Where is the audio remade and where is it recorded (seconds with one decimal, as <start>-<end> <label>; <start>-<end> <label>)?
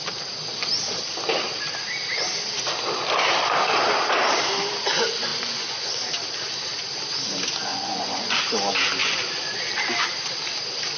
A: 0.0-5.3 recorded; 5.3-5.9 remade; 5.9-7.7 recorded; 7.7-8.4 remade; 8.4-9.0 recorded; 9.0-9.6 remade; 9.6-11.0 recorded